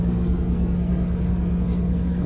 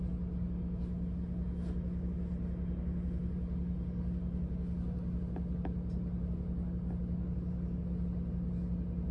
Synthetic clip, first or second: first